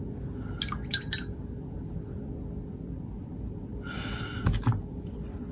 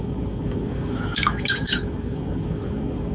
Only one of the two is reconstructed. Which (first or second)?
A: second